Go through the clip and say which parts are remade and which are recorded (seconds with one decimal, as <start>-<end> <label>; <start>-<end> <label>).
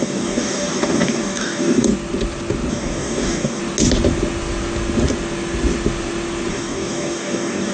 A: 0.0-1.9 remade; 1.9-2.7 recorded; 2.7-3.6 remade; 3.6-6.5 recorded; 6.5-7.7 remade